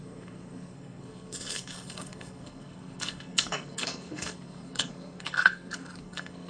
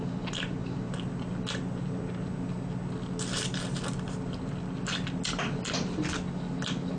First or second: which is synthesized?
first